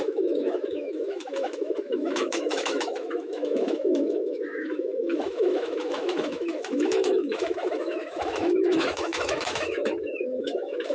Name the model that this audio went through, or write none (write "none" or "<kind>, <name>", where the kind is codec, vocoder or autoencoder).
autoencoder, DAC-VAE